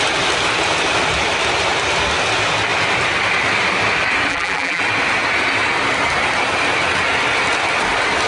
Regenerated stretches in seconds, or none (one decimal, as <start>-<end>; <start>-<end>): 4.3-4.8